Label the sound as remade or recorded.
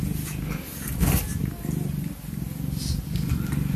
recorded